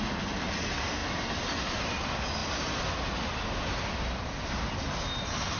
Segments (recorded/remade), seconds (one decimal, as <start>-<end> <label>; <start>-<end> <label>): 0.0-5.6 recorded